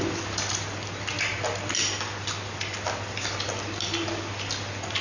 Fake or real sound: real